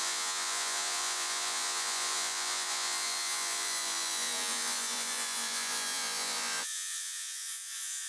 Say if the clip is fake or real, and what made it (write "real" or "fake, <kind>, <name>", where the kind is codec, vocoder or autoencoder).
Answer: fake, vocoder, Vocos